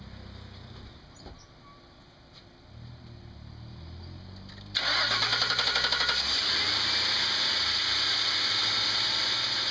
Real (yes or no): yes